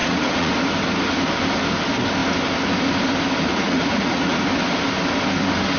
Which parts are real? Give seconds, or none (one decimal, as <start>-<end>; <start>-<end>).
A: 0.5-3.5; 4.4-5.8